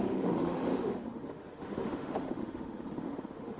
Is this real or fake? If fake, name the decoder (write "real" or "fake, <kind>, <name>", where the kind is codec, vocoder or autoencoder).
fake, autoencoder, DAC-VAE